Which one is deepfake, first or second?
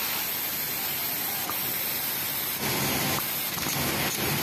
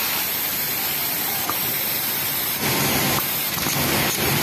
second